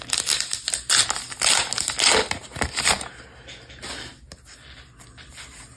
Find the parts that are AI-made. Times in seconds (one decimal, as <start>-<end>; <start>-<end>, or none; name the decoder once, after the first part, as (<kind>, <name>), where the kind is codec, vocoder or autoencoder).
none

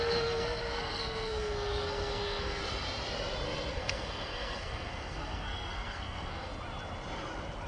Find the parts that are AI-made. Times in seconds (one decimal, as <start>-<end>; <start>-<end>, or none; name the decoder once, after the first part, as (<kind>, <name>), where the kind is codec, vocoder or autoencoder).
0.0-2.6 (codec, SNAC); 3.7-6.5

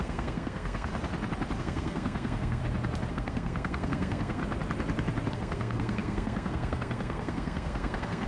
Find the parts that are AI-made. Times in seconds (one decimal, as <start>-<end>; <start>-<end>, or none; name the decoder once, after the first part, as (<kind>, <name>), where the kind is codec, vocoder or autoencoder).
0.0-0.9 (codec, SNAC); 1.6-2.6; 3.1-4.4; 5.3-8.3

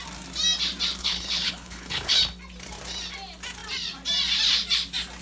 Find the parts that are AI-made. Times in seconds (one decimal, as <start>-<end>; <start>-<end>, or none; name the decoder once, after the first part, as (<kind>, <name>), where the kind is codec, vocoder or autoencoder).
1.0-2.2 (codec, HILCodec)

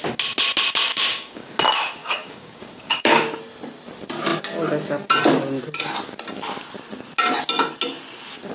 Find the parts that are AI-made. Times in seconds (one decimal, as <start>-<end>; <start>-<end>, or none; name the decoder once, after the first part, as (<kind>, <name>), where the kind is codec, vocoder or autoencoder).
0.9-1.6 (codec, DAC); 2.0-3.4

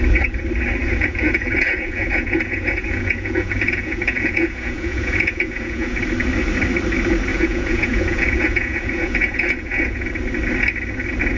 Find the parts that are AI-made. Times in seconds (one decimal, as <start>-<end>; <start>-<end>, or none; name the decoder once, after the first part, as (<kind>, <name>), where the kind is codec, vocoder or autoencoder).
0.8-6.0 (vocoder, Vocos); 7.3-10.1

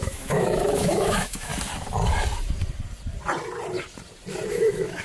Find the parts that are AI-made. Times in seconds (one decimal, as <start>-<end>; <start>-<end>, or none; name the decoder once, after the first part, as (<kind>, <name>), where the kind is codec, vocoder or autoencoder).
0.0-1.5 (autoencoder, DAC-VAE); 4.5-5.0

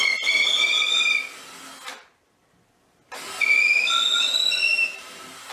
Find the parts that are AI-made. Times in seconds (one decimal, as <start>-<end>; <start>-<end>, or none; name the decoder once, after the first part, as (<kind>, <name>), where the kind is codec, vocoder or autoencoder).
4.7-5.5 (vocoder, BigVGAN v2)